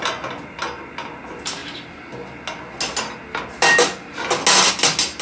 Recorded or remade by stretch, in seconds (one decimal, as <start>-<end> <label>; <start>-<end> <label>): 0.0-5.2 recorded